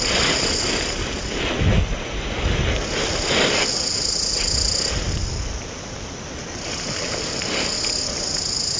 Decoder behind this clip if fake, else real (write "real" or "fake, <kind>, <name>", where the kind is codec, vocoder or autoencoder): real